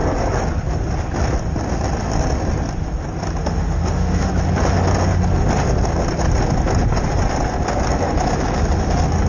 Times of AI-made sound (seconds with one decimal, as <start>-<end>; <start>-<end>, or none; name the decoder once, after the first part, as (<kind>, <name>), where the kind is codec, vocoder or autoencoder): 3.4-4.3 (autoencoder, DAC-VAE)